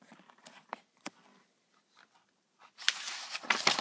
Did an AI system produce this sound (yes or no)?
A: yes